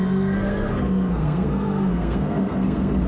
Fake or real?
fake